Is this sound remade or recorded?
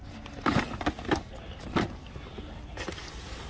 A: recorded